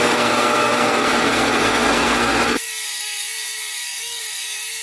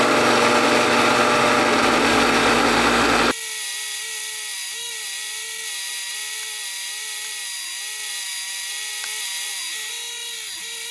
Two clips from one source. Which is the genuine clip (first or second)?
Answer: second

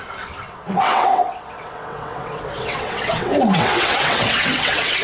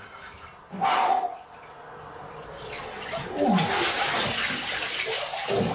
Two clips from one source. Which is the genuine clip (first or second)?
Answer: second